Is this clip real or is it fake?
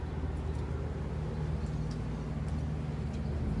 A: real